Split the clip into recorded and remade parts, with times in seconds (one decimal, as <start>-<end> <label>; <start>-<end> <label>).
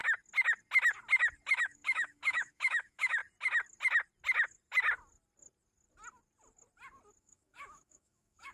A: 0.0-1.6 recorded; 1.6-3.2 remade; 3.2-7.2 recorded; 7.2-8.5 remade